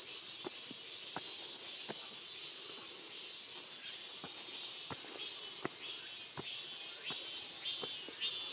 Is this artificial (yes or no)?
no